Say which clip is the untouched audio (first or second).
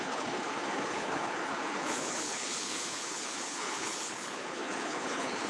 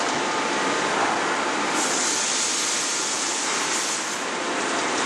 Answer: second